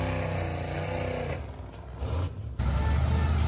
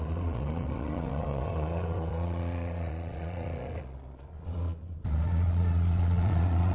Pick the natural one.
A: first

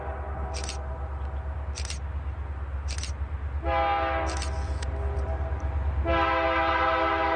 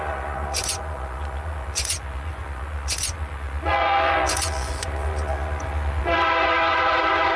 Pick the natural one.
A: first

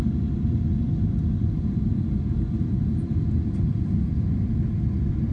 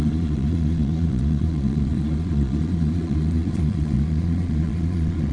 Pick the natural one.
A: first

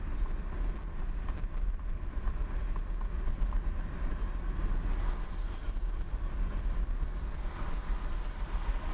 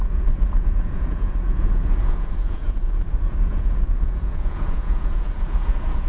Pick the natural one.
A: first